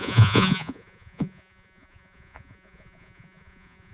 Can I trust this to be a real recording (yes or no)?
no